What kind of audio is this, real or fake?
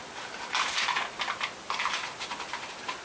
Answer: real